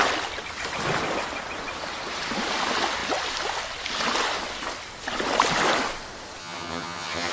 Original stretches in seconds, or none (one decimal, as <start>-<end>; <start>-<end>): 0.0-6.4